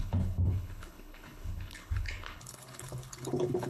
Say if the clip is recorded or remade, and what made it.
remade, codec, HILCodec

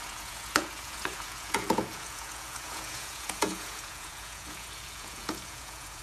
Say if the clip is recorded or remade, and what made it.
remade, vocoder, Vocos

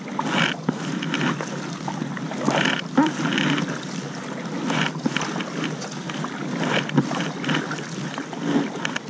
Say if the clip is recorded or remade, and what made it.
recorded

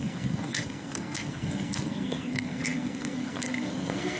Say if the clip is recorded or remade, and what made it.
remade, codec, SNAC